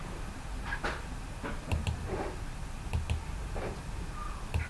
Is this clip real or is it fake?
real